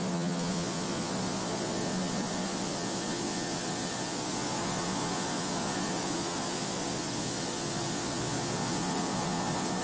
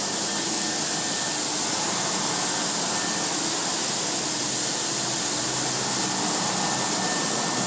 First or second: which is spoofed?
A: first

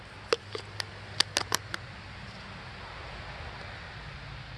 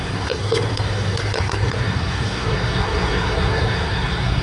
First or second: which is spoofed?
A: second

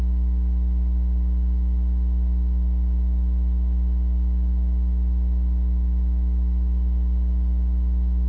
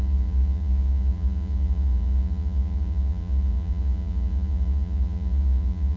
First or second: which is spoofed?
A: second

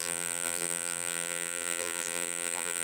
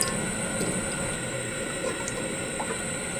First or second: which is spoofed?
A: first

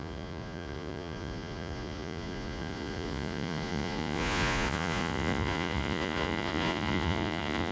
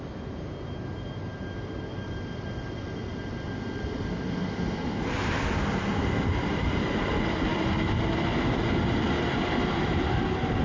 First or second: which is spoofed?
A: first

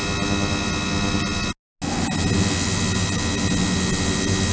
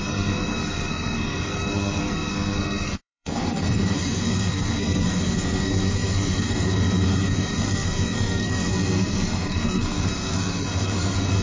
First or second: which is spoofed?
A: second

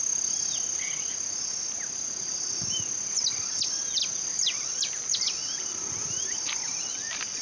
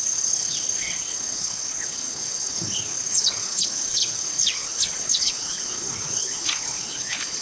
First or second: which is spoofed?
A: second